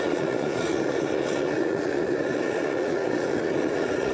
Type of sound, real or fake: fake